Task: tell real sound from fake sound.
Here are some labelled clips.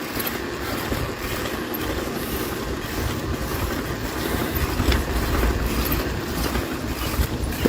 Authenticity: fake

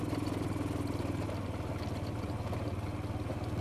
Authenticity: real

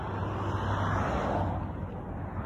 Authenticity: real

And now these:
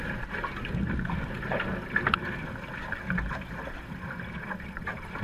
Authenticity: real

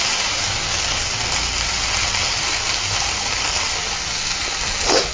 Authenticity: real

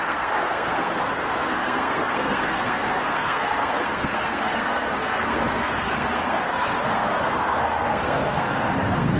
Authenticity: fake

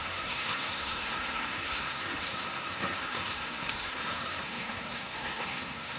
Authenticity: fake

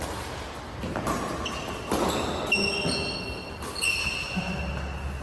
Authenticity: real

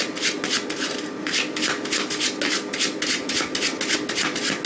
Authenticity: real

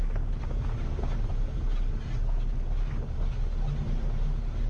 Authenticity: real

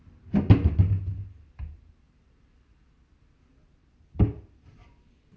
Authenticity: real